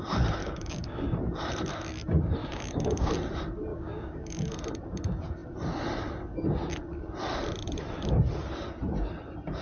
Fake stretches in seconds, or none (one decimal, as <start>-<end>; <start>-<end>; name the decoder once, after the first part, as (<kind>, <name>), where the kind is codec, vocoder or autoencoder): 0.4-1.0 (codec, DAC); 2.4-3.1; 3.7-4.5